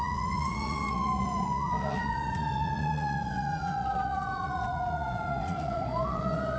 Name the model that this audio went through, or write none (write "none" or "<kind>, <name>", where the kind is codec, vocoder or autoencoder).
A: vocoder, Vocos